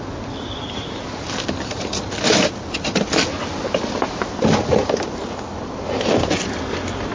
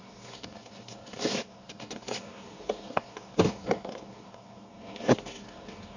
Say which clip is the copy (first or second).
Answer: second